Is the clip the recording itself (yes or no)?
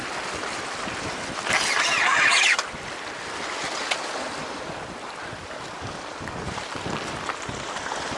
no